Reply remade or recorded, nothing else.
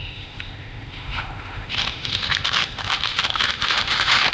remade